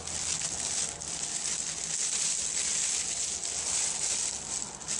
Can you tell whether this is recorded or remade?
recorded